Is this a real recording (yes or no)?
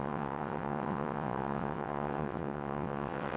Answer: no